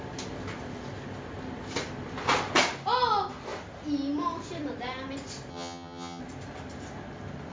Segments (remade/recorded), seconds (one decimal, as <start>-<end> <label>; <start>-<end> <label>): 0.0-5.5 recorded; 5.5-6.2 remade; 6.2-7.5 recorded